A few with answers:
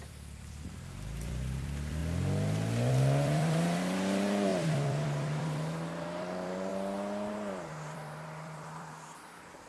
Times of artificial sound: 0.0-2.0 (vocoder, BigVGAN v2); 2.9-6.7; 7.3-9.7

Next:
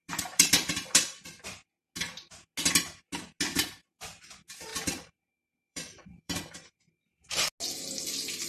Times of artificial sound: 0.0-1.7 (vocoder, BigVGAN v2); 4.7-7.3

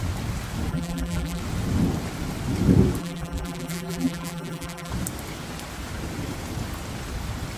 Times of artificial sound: 0.7-1.4 (vocoder, BigVGAN v2); 3.0-4.9